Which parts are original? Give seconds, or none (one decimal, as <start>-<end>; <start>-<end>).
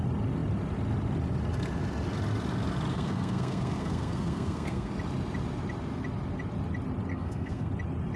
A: 0.0-2.9; 4.9-7.1; 7.7-8.2